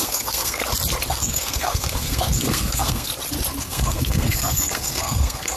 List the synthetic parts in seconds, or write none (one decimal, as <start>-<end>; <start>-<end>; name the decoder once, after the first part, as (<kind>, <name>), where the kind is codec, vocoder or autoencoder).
0.0-0.6 (codec, SNAC); 1.1-3.1; 3.6-5.6